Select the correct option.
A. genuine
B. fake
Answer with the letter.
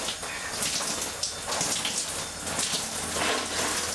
A